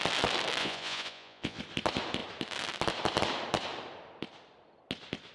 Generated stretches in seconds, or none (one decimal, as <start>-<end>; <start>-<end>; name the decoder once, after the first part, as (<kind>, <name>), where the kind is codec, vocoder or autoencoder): 0.6-1.6 (vocoder, Vocos)